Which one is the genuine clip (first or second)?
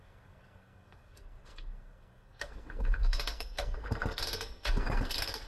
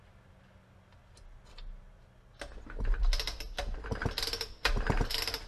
second